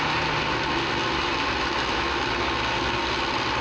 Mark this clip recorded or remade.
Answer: recorded